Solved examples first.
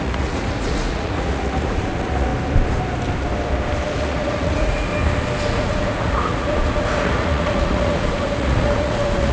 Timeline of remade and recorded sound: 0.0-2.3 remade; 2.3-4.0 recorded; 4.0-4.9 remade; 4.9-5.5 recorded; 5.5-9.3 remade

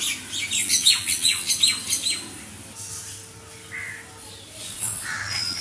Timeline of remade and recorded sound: 0.0-0.6 recorded; 0.6-1.5 remade; 1.5-4.6 recorded; 4.6-5.6 remade

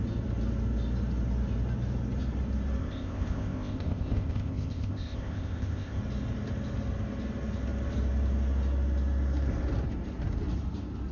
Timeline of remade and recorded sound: 0.0-2.8 recorded; 2.8-6.0 remade; 6.0-11.1 recorded

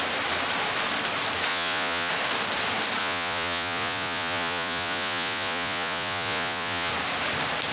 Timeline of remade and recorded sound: 0.0-1.5 recorded; 1.5-2.1 remade; 2.1-3.0 recorded; 3.0-6.9 remade; 6.9-7.7 recorded

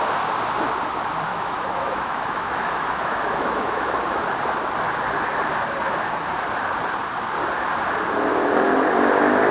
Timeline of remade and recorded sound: 0.0-1.3 recorded; 1.3-4.0 remade; 4.0-9.5 recorded

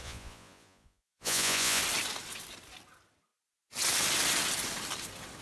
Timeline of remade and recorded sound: 0.0-1.8 remade; 1.8-5.4 recorded

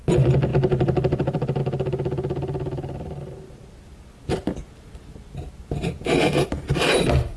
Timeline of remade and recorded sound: 0.0-7.4 recorded

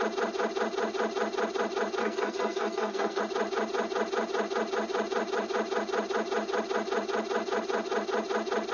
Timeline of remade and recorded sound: 0.0-2.0 recorded; 2.0-3.2 remade; 3.2-8.7 recorded